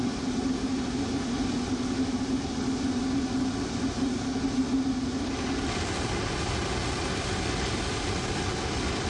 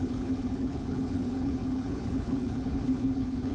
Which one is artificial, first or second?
second